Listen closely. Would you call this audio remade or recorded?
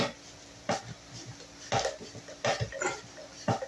recorded